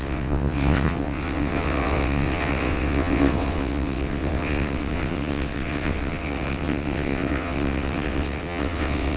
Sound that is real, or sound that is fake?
fake